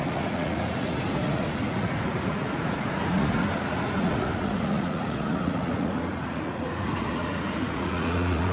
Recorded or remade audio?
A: remade